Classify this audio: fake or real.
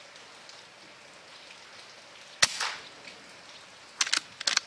real